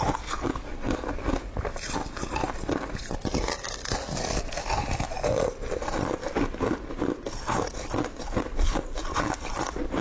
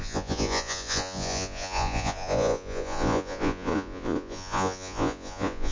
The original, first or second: first